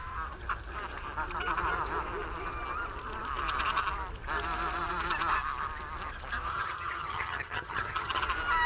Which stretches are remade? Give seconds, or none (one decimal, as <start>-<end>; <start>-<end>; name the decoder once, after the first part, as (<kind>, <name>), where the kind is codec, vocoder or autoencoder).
6.5-8.2 (vocoder, HiFi-GAN)